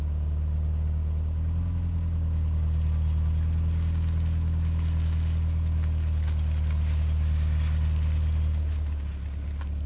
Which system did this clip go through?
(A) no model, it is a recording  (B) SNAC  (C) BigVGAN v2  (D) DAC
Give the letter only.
A